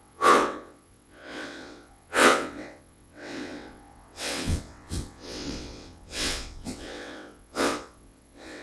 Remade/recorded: remade